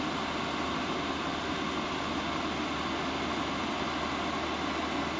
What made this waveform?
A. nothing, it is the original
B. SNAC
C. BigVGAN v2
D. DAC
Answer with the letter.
A